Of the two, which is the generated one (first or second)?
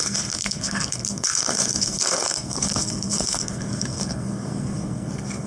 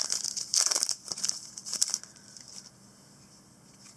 first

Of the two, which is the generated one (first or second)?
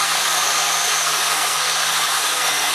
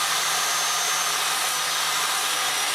first